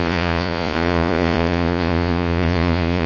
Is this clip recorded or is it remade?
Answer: remade